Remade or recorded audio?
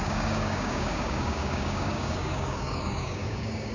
remade